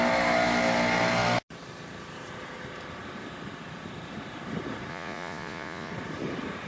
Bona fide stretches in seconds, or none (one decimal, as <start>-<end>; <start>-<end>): 0.0-4.9; 5.9-6.7